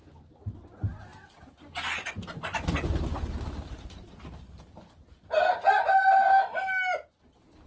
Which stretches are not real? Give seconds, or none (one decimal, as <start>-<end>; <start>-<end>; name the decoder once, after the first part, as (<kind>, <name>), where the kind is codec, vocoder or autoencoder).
none